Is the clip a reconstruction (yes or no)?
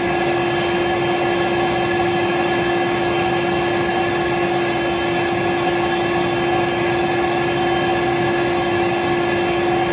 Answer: no